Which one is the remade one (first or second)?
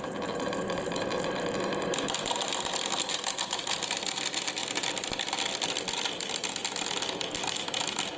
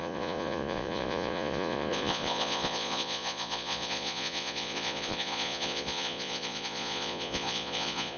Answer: second